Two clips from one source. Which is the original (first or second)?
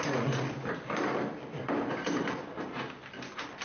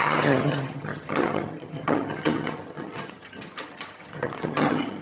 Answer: first